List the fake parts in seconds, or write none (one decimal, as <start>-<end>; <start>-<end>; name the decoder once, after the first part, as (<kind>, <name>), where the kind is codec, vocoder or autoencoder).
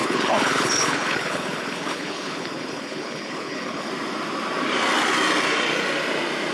0.0-3.9 (codec, HILCodec)